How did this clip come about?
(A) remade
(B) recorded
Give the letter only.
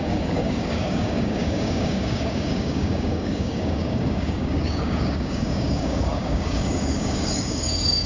A